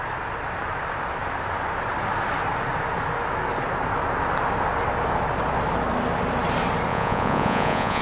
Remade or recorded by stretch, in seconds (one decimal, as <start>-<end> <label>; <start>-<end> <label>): 0.0-6.9 recorded; 6.9-8.0 remade

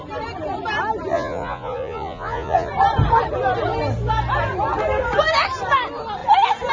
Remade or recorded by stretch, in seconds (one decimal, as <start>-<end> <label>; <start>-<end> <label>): 0.0-1.1 recorded; 1.1-2.7 remade; 2.7-6.7 recorded

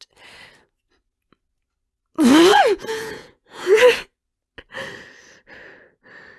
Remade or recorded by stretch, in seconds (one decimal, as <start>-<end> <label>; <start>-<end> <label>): 0.0-2.5 recorded; 2.5-3.8 remade; 3.8-6.4 recorded

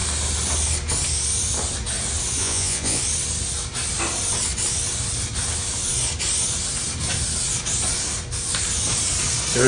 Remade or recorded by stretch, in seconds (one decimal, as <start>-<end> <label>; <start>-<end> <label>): 0.0-2.4 recorded; 2.4-3.0 remade; 3.0-9.7 recorded